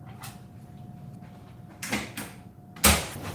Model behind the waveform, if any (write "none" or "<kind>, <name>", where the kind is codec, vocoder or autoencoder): none